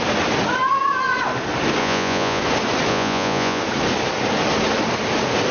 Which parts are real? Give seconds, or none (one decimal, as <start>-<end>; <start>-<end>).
0.0-1.8; 2.4-2.9; 3.6-5.5